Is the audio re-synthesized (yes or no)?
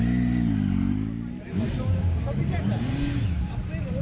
no